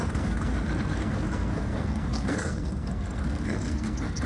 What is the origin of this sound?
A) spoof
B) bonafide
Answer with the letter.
A